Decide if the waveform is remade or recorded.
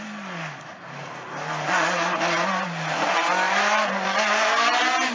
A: recorded